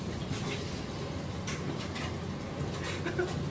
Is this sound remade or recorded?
recorded